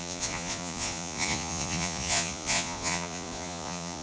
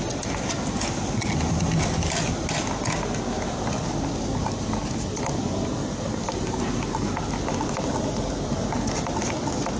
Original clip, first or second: second